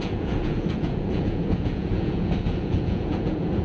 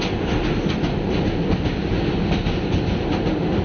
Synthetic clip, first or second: first